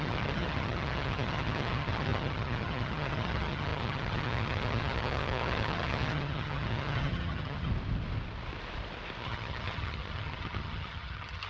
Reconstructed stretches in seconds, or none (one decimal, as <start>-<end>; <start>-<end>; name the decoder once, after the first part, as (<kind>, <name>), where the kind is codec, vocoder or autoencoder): 0.0-7.7 (vocoder, HiFi-GAN); 9.2-11.5